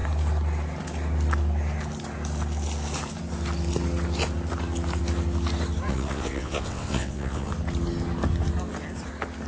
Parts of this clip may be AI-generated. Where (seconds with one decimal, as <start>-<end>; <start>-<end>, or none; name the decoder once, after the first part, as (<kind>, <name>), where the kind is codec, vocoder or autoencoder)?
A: 5.9-7.5 (vocoder, WaveNeXt)